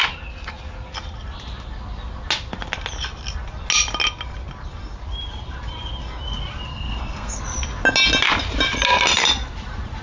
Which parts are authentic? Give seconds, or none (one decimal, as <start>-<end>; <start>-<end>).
0.0-6.7; 7.4-10.0